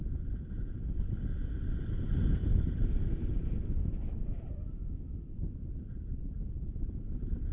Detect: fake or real real